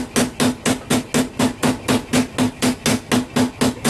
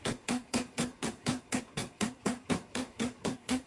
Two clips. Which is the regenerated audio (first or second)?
second